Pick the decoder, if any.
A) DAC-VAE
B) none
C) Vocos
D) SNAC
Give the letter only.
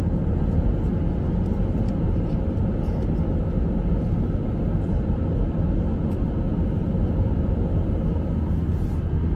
B